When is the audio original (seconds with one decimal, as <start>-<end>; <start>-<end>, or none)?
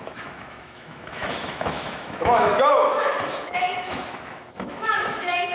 none